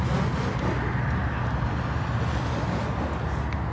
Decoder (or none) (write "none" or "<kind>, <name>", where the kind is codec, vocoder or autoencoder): none